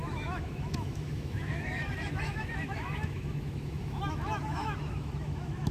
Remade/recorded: remade